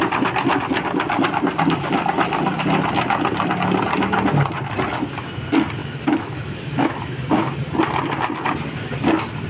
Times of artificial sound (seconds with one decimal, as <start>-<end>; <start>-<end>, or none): 5.8-7.3